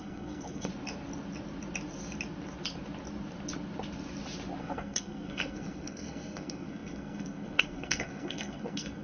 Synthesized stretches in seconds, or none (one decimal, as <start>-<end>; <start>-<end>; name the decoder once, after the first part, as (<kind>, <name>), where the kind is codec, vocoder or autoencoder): 0.0-0.7 (codec, SNAC); 4.6-9.0